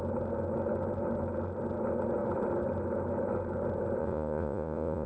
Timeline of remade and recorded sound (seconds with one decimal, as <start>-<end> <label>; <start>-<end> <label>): 0.0-4.0 recorded; 4.0-5.1 remade